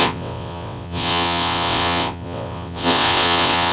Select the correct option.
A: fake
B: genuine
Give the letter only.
A